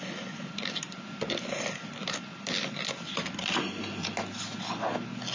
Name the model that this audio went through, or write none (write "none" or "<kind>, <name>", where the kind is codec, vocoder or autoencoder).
none